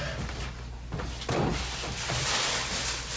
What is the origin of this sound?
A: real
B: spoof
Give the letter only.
A